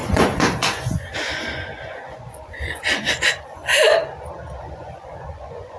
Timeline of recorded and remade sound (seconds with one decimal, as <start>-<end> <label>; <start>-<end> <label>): 0.0-3.6 remade; 3.6-4.6 recorded; 4.6-5.8 remade